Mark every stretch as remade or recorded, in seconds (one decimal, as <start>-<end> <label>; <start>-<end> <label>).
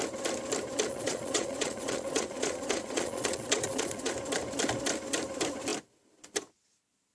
0.0-0.9 recorded; 0.9-4.1 remade; 4.1-7.1 recorded